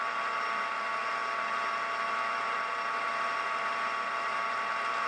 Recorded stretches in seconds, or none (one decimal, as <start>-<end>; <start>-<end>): 0.0-5.1